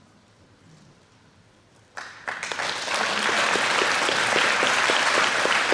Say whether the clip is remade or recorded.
recorded